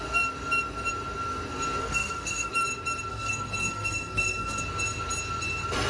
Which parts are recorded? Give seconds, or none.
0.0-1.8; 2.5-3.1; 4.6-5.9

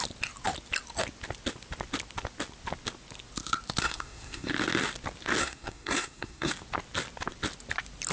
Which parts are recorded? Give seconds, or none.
0.0-3.8; 4.5-5.4; 6.5-8.1

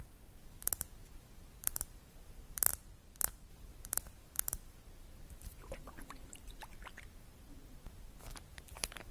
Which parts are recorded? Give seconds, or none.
2.7-3.5

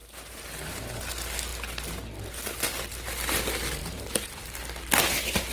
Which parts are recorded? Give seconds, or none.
1.1-3.8; 4.4-5.5

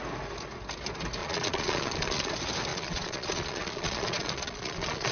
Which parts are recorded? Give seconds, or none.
0.0-1.2; 2.3-2.7

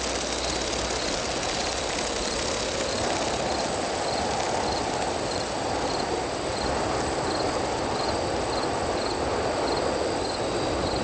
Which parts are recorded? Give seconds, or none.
0.0-11.0